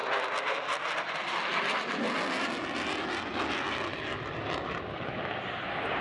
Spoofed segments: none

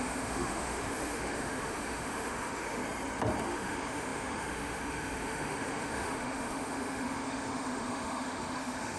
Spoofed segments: 0.0-2.8 (autoencoder, DAC-VAE); 3.4-9.0

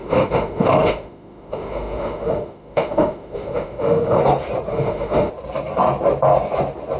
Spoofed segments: 0.0-4.2 (autoencoder, DAC-VAE); 4.7-5.3

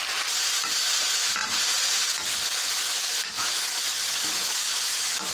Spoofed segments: 2.8-5.3 (autoencoder, DAC-VAE)

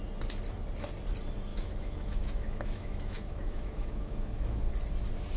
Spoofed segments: 1.5-4.7 (autoencoder, DAC-VAE)

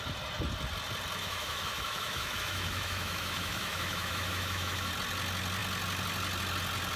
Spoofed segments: 1.2-4.9 (autoencoder, DAC-VAE)